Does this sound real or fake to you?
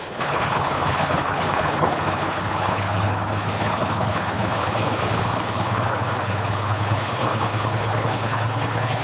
fake